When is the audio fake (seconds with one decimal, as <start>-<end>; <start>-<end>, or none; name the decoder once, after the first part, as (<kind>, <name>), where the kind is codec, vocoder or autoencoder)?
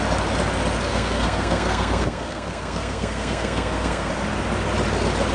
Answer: 0.9-4.1 (codec, SNAC)